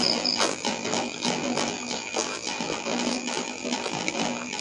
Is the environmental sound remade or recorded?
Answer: remade